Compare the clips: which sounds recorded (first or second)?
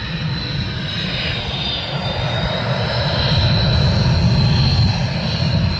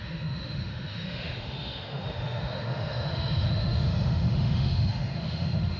first